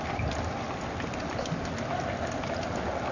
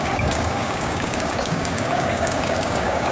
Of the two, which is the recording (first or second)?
first